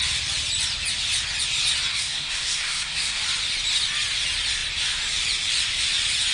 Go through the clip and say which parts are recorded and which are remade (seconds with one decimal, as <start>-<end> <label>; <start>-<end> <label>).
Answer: 0.0-1.9 recorded; 1.9-3.2 remade; 3.2-6.3 recorded